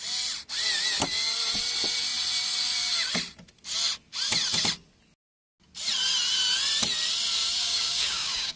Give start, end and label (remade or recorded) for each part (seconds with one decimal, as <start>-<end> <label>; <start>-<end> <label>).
0.0-7.6 recorded; 7.6-8.6 remade